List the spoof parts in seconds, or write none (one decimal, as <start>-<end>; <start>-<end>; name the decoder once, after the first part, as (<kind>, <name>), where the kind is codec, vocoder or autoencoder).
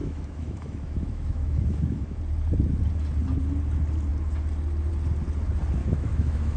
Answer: 0.0-2.2 (autoencoder, DAC-VAE); 5.8-6.6